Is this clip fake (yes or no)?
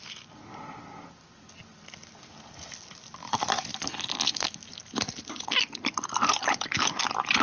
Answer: no